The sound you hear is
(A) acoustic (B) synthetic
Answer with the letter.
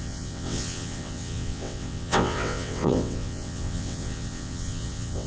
B